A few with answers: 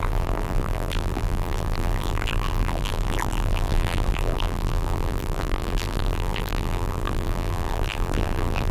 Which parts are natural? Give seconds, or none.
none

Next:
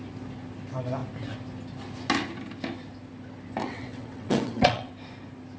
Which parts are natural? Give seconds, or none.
0.0-3.6; 4.9-5.6